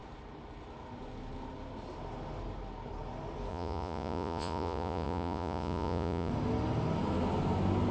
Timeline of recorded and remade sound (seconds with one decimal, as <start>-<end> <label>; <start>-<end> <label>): 0.0-3.5 recorded; 3.5-6.3 remade; 6.3-7.9 recorded